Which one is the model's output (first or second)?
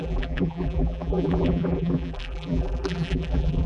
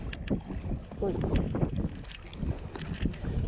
first